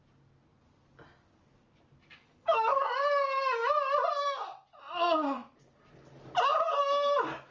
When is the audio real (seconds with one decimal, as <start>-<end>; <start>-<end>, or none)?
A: 0.0-2.2; 2.8-7.5